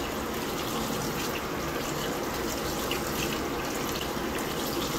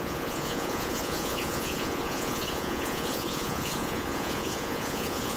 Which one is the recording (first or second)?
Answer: first